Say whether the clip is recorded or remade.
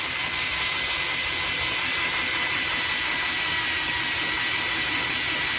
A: recorded